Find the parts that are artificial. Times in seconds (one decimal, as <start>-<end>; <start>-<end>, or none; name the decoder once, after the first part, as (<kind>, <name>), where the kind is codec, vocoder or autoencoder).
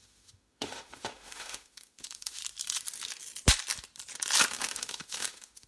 0.0-2.4 (autoencoder, DAC-VAE); 4.5-5.7